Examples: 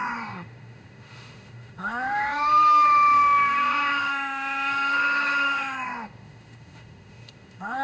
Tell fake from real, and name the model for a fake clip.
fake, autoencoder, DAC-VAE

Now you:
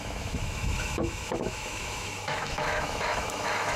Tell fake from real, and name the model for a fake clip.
fake, autoencoder, DAC-VAE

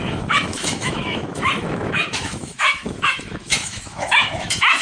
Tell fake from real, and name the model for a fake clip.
fake, autoencoder, DAC-VAE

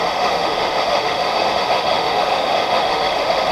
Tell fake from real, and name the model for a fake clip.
fake, autoencoder, DAC-VAE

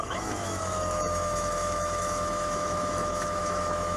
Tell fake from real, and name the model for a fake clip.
fake, autoencoder, DAC-VAE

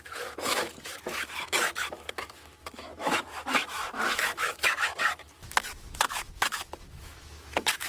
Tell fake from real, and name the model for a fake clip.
fake, autoencoder, DAC-VAE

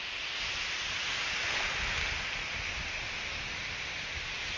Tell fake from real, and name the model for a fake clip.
real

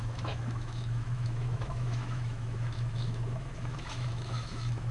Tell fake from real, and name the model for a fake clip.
fake, autoencoder, DAC-VAE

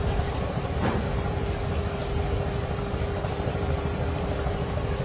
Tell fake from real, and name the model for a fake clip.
real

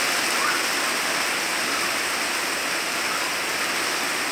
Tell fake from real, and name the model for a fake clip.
real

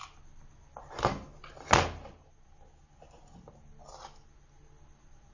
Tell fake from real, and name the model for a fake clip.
real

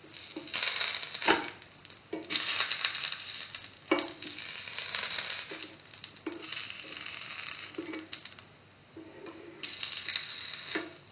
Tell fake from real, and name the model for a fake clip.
real